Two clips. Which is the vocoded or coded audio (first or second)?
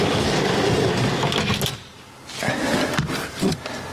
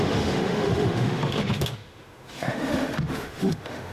second